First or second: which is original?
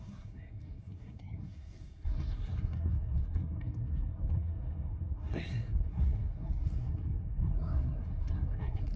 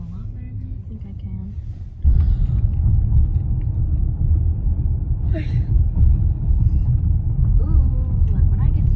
second